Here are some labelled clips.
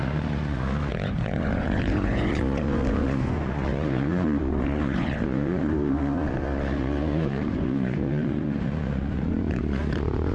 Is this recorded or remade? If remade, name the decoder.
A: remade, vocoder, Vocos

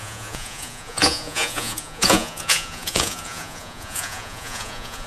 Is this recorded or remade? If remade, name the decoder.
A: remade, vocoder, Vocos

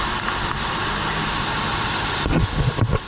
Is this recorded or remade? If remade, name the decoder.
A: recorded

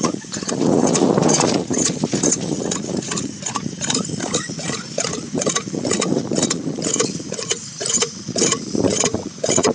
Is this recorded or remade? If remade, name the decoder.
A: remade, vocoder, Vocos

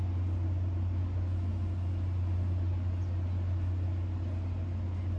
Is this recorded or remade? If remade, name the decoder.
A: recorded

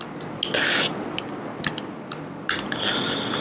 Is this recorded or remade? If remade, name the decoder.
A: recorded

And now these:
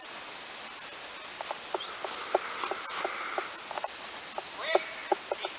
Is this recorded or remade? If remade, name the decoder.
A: recorded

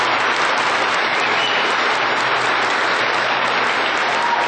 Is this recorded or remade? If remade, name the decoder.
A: recorded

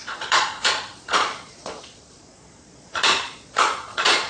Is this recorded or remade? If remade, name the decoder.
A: remade, vocoder, Vocos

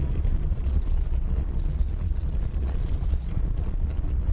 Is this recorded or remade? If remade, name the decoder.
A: remade, vocoder, Vocos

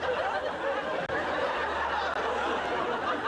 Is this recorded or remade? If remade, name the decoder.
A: recorded